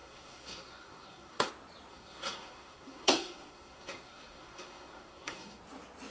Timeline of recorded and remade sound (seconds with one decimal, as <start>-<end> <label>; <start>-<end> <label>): 0.0-1.5 remade; 1.5-1.9 recorded; 1.9-5.6 remade; 5.6-6.1 recorded